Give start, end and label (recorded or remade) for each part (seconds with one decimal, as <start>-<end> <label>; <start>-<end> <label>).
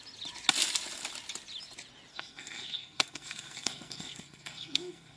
0.0-2.1 recorded; 2.1-5.2 remade